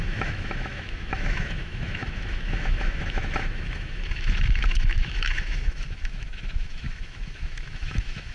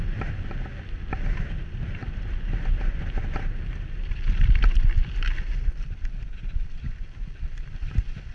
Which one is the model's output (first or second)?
first